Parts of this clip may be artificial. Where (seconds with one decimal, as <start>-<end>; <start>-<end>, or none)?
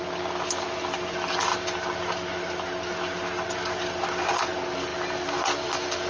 none